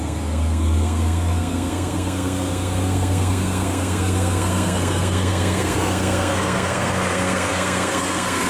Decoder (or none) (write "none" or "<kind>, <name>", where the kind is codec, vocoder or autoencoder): codec, SNAC